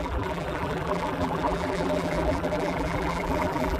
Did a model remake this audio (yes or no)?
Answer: yes